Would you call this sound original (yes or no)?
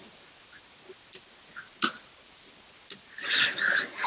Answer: yes